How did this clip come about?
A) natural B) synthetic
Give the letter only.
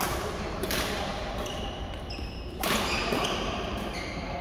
B